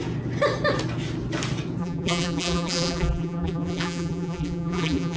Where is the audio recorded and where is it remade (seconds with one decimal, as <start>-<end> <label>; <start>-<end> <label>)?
0.0-1.8 recorded; 1.8-5.2 remade